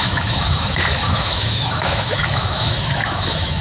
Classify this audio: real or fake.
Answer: fake